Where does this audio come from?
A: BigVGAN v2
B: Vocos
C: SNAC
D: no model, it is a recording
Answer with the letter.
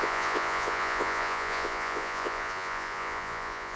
B